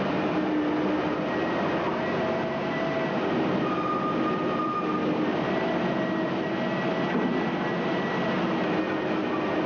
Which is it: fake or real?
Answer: real